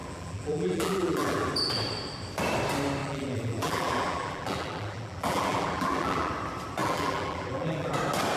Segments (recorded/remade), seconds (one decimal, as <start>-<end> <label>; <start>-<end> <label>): 0.0-1.5 remade; 1.5-3.0 recorded; 3.0-6.3 remade; 6.3-6.8 recorded; 6.8-7.9 remade; 7.9-8.4 recorded

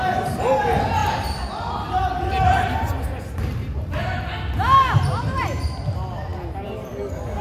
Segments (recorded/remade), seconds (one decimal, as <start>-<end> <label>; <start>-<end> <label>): 0.0-6.3 recorded; 6.3-7.0 remade; 7.0-7.4 recorded

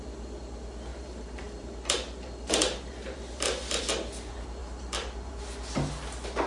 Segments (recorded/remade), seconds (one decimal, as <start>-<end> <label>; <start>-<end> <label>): 0.0-0.9 recorded; 0.9-3.8 remade; 3.8-4.6 recorded; 4.6-5.3 remade; 5.3-6.5 recorded

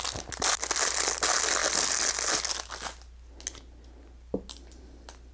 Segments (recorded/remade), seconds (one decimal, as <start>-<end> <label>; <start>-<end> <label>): 0.0-5.3 recorded

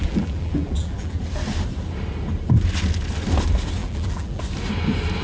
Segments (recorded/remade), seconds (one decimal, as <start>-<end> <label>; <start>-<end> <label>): 0.0-1.2 remade; 1.2-3.8 recorded; 3.8-4.4 remade; 4.4-5.2 recorded

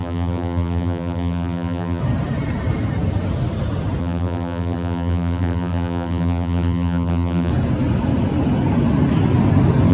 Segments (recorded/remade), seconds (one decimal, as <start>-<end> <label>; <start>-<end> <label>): 0.0-2.0 remade; 2.0-4.0 recorded; 4.0-7.5 remade; 7.5-9.9 recorded